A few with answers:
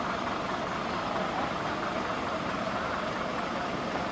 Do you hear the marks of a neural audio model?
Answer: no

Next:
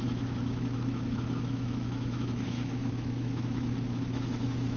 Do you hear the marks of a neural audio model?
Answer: yes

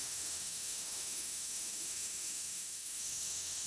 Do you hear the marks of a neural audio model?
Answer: yes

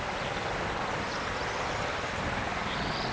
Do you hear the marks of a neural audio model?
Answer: no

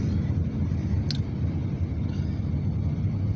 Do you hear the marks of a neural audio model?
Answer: no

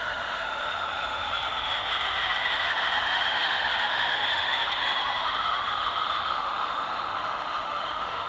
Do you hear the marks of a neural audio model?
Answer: yes